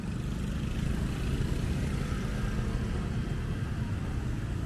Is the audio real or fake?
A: real